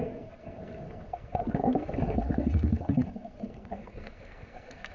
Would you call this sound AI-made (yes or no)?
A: yes